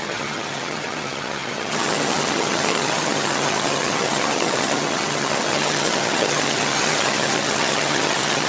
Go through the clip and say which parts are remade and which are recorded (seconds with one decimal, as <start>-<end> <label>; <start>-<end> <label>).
0.0-8.5 remade